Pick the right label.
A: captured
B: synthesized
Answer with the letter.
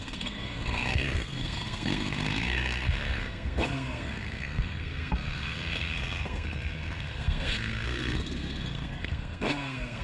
B